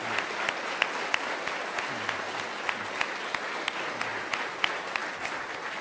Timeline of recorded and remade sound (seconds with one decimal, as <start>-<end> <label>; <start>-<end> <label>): 0.0-5.8 recorded